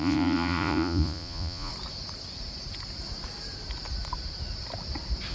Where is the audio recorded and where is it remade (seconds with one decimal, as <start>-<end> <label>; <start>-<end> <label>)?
0.0-1.7 remade; 1.7-5.3 recorded